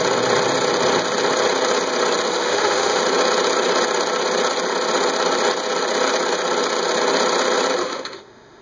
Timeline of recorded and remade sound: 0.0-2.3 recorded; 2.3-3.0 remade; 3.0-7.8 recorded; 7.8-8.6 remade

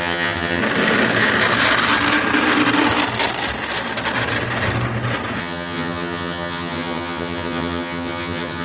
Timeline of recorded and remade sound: 0.0-0.6 remade; 0.6-5.4 recorded; 5.4-8.6 remade